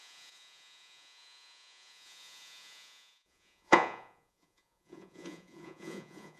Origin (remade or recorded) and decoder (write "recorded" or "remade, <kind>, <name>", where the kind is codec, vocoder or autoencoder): remade, vocoder, Vocos